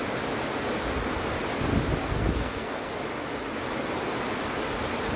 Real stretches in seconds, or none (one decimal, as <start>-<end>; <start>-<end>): 0.0-2.0; 2.9-5.2